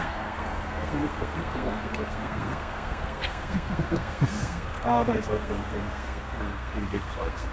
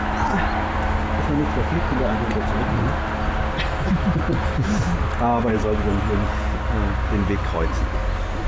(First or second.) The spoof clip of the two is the first